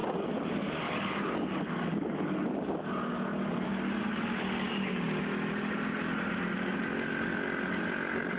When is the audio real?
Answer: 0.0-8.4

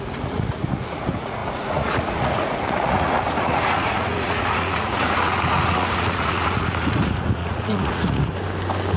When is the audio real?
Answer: 8.3-9.0

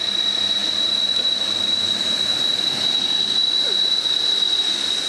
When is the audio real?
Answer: 0.0-0.6; 3.7-5.1

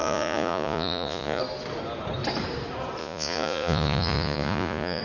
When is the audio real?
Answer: 1.4-3.0

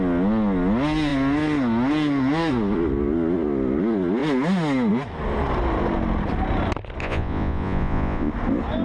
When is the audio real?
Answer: 0.0-7.0; 8.3-8.8

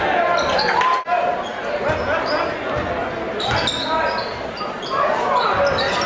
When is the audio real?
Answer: 0.0-6.1

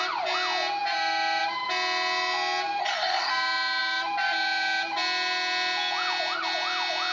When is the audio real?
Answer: 0.0-2.8; 3.3-7.1

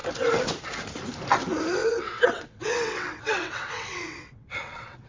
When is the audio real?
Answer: 0.0-1.8